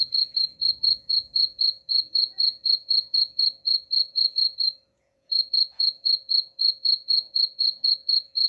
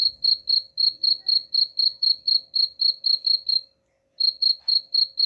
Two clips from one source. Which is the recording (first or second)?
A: second